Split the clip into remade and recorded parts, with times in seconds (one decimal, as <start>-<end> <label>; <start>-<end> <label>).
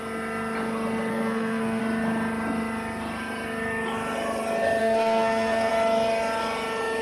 0.0-1.1 recorded; 1.1-1.8 remade; 1.8-4.8 recorded; 4.8-5.7 remade; 5.7-7.0 recorded